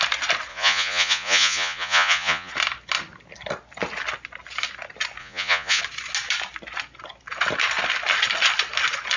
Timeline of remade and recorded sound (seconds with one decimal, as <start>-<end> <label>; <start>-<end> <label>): 0.0-0.5 recorded; 0.5-2.5 remade; 2.5-5.2 recorded; 5.2-5.8 remade; 5.8-9.2 recorded